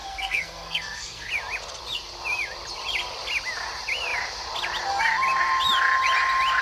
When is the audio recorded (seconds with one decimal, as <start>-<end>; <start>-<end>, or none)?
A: 1.3-6.6

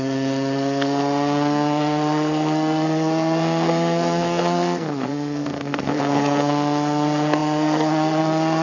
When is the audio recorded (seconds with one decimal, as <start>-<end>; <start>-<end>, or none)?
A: none

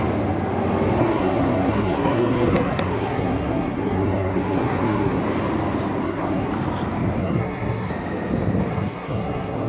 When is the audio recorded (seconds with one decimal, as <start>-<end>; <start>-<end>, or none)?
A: 0.0-1.0; 5.2-6.0; 6.5-7.2; 7.9-8.7

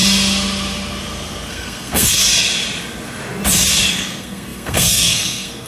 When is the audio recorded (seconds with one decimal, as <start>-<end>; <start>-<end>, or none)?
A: 0.0-1.5; 2.2-3.9

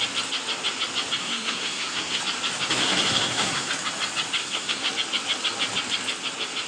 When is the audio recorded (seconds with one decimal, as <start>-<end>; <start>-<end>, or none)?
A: 0.0-1.2; 2.2-2.8; 3.7-4.4; 4.9-6.7

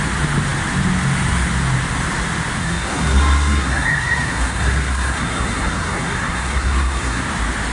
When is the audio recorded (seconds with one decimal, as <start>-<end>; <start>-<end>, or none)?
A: 0.0-2.6; 7.2-7.7